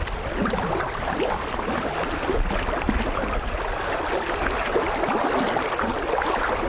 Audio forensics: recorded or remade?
recorded